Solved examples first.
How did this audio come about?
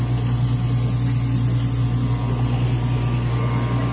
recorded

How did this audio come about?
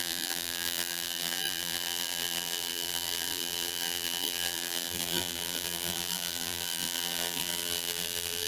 remade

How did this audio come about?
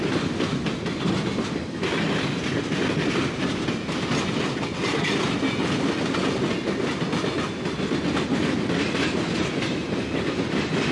recorded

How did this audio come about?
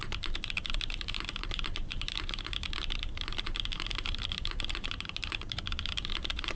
remade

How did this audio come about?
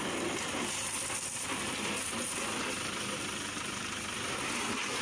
recorded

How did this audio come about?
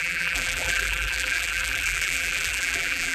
remade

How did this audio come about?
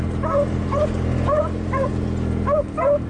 recorded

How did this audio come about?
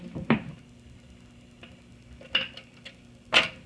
recorded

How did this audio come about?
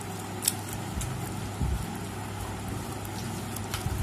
recorded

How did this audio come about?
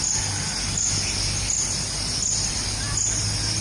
recorded